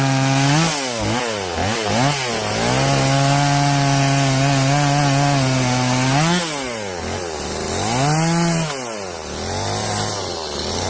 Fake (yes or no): no